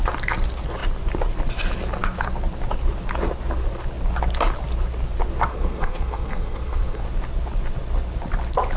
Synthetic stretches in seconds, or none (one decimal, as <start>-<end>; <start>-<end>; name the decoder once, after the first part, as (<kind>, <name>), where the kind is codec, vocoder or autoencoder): 5.5-7.0 (codec, SNAC)